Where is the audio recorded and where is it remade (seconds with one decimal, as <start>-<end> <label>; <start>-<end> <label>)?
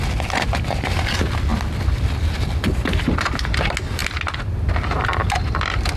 0.0-6.0 recorded